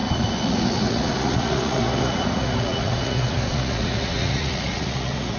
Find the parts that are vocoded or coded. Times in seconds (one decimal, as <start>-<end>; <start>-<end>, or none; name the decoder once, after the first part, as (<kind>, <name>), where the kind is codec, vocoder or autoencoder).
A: 0.0-5.4 (vocoder, Vocos)